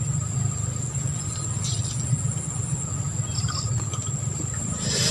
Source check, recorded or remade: recorded